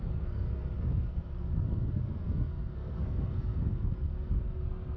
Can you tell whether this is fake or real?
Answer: fake